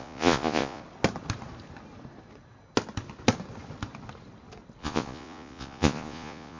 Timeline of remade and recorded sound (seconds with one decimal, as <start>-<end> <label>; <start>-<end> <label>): 0.0-0.8 remade; 0.8-4.8 recorded; 4.8-6.6 remade